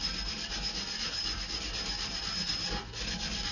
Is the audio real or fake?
real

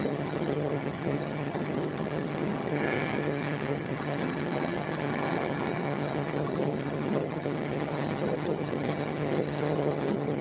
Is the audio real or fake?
fake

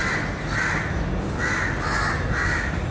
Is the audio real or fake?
real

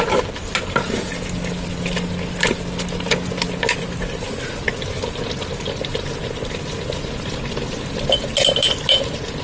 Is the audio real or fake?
real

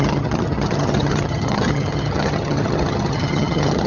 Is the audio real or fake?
fake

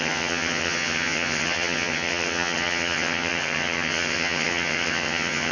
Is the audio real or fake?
fake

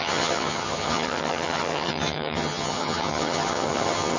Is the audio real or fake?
fake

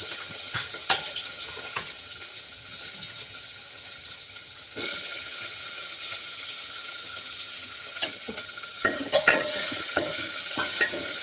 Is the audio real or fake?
fake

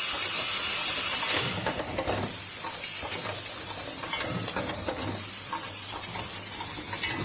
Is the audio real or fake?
real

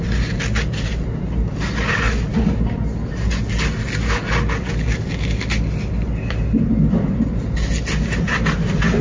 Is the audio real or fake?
real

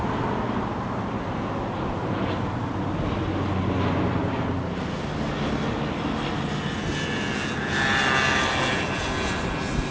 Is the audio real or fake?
real